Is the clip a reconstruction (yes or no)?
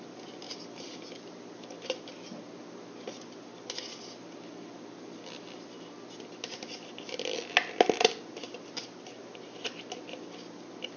no